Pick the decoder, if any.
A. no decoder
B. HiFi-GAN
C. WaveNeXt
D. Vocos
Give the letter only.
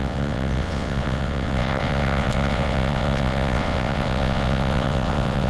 C